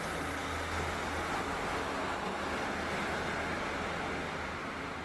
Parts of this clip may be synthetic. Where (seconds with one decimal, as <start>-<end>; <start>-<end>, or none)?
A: none